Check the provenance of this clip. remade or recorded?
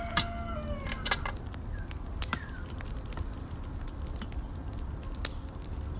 recorded